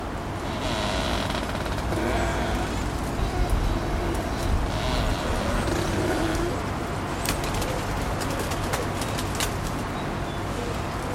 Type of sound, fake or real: real